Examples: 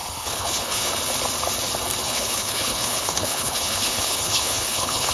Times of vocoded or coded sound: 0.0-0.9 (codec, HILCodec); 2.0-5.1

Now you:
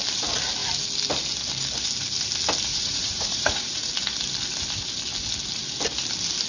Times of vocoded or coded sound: 2.7-3.9 (vocoder, Vocos)

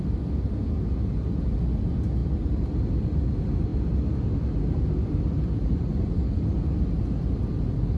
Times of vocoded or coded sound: 2.2-2.7 (vocoder, BigVGAN v2)

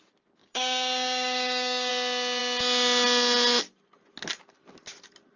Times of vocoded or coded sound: 0.4-1.9 (codec, DAC)

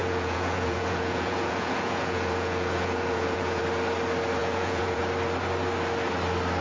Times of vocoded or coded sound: 0.0-3.6 (vocoder, Vocos); 4.4-5.0

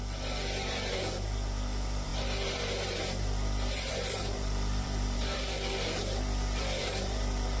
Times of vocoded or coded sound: 0.0-7.6 (vocoder, BigVGAN v2)